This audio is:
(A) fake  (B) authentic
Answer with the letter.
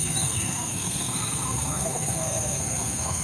A